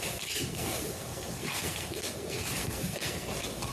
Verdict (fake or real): fake